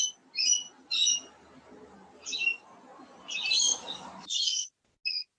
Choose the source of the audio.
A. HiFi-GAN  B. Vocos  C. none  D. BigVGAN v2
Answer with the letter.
C